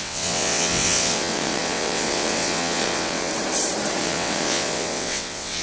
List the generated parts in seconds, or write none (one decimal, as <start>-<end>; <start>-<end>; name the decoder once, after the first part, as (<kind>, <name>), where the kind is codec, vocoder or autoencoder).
0.0-3.3 (vocoder, WaveNeXt); 4.0-5.6